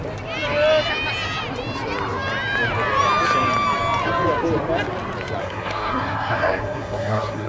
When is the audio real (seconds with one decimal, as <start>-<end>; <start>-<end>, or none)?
0.0-5.4